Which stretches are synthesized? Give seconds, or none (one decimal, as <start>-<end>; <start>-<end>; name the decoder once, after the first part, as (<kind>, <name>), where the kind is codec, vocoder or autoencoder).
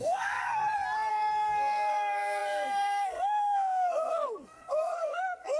0.0-0.6 (codec, SNAC); 1.1-5.6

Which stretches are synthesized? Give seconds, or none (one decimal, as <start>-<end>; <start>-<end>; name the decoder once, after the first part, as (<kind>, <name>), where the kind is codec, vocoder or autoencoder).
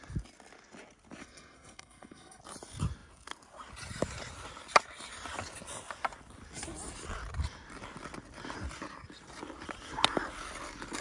1.2-2.4 (codec, SNAC)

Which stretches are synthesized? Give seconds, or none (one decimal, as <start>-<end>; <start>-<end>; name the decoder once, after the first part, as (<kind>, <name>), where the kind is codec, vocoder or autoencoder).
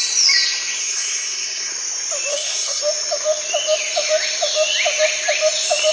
0.8-1.7 (codec, SNAC); 2.3-2.8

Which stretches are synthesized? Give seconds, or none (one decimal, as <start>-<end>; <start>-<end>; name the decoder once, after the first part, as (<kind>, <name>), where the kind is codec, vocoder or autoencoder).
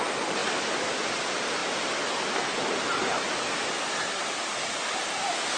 none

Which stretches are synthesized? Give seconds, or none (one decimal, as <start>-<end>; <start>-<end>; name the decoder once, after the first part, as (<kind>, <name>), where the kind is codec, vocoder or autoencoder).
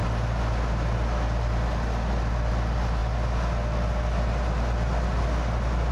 none